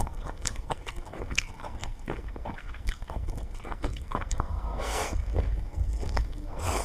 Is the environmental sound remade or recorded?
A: remade